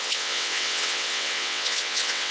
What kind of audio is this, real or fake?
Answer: fake